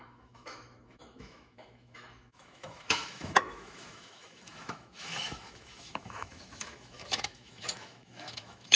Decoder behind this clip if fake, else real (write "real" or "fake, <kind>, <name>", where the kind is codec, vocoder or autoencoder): fake, autoencoder, DAC-VAE